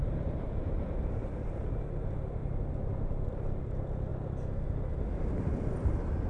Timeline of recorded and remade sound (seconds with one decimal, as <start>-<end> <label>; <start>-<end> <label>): 0.0-1.5 recorded; 1.5-2.4 remade; 2.4-3.2 recorded; 3.2-4.1 remade; 4.1-5.2 recorded; 5.2-6.3 remade